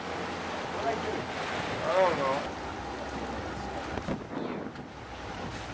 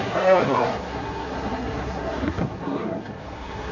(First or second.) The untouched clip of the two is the first